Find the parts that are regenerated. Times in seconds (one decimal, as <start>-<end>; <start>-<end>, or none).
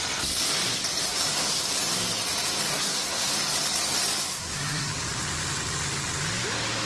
1.1-1.6; 2.7-3.3; 4.3-4.9